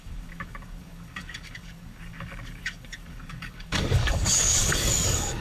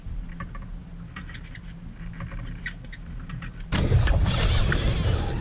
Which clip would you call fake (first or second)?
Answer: first